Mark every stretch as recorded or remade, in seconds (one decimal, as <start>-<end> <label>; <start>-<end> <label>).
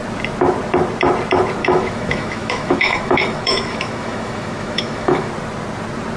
0.0-1.6 recorded; 1.6-5.3 remade; 5.3-6.2 recorded